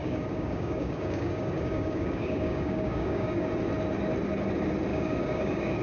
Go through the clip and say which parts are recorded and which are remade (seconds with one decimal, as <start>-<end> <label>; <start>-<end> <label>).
0.0-3.5 remade; 3.5-4.9 recorded; 4.9-5.8 remade